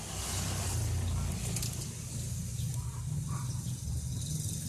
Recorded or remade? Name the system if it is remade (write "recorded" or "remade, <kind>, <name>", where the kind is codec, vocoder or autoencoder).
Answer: recorded